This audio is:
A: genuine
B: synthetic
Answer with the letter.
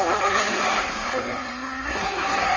B